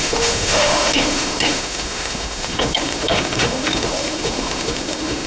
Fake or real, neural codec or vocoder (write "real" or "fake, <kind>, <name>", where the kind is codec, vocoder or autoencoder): fake, autoencoder, DAC-VAE